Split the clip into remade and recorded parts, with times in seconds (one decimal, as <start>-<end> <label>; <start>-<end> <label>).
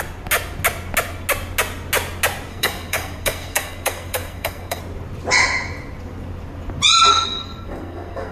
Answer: 0.0-2.5 recorded; 2.5-4.8 remade; 4.8-7.1 recorded; 7.1-8.3 remade